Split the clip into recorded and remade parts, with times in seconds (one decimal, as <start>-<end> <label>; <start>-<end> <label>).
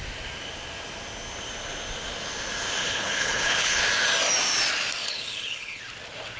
0.0-2.8 recorded; 2.8-3.8 remade; 3.8-5.0 recorded; 5.0-5.8 remade; 5.8-6.4 recorded